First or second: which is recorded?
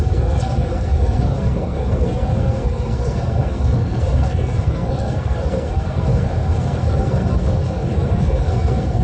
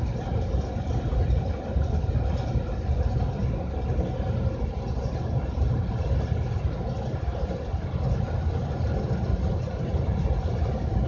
second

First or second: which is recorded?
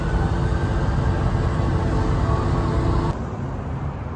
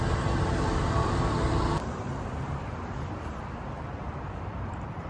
first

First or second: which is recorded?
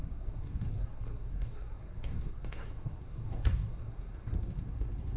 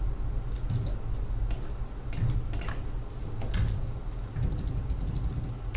second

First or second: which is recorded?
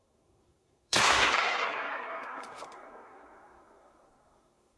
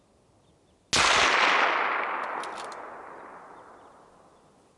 second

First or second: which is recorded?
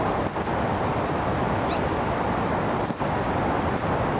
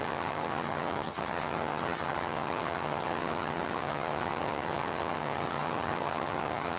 first